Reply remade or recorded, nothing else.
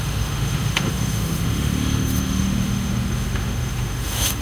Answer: remade